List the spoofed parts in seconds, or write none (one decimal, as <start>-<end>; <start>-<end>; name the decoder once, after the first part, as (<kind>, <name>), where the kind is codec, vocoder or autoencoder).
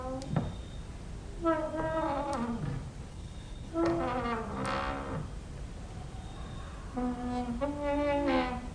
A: 3.1-3.7 (codec, HILCodec)